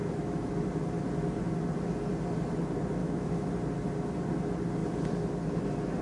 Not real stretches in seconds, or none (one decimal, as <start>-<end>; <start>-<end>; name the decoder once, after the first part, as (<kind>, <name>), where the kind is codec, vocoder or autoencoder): 0.0-0.5 (autoencoder, DAC-VAE); 3.0-3.5